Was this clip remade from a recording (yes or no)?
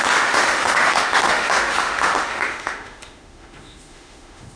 yes